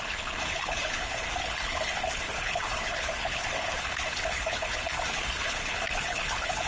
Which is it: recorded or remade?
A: remade